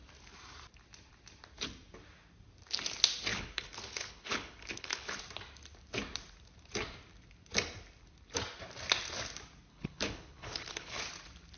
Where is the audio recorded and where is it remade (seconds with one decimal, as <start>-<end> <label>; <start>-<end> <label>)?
0.0-3.3 recorded; 3.3-5.2 remade; 5.2-9.7 recorded; 9.7-11.0 remade; 11.0-11.6 recorded